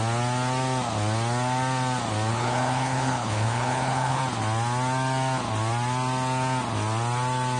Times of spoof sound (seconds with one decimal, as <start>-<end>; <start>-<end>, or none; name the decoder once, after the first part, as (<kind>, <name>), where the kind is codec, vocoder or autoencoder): 2.3-4.2 (codec, HILCodec)